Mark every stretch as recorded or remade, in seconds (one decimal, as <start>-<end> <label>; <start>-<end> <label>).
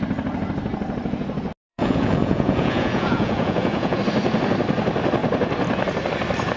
0.0-1.7 recorded; 1.7-4.0 remade; 4.0-6.6 recorded